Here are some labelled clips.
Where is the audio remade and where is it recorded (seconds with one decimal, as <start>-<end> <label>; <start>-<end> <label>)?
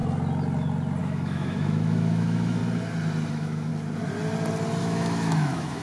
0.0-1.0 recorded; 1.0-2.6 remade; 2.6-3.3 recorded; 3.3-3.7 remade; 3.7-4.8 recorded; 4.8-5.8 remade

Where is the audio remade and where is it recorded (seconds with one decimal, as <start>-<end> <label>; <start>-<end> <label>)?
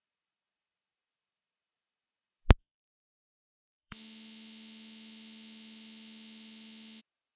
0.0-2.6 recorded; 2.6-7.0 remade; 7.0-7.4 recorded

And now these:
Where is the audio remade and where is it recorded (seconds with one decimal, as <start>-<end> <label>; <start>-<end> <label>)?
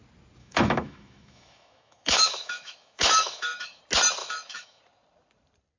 0.0-0.4 recorded; 0.4-3.8 remade; 3.8-4.2 recorded; 4.2-4.8 remade; 4.8-5.8 recorded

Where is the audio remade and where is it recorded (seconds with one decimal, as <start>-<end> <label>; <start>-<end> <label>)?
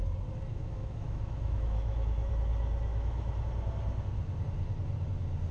0.0-0.5 recorded; 0.5-2.3 remade; 2.3-2.9 recorded; 2.9-3.5 remade; 3.5-5.5 recorded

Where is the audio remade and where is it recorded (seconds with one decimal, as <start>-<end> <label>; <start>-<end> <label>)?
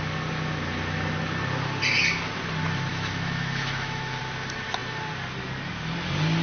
0.0-2.9 recorded; 2.9-4.2 remade; 4.2-6.4 recorded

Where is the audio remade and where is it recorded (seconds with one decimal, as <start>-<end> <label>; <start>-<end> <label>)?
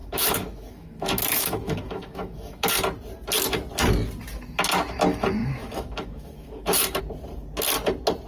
0.0-2.7 remade; 2.7-5.4 recorded; 5.4-7.0 remade; 7.0-8.3 recorded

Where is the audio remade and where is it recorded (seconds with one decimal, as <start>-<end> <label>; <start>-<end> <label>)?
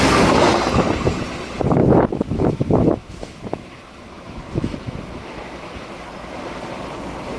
0.0-1.8 recorded; 1.8-6.1 remade; 6.1-7.4 recorded